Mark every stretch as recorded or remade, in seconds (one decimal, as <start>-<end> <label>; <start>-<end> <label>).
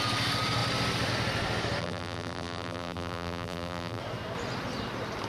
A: 0.0-1.8 recorded; 1.8-4.0 remade; 4.0-5.3 recorded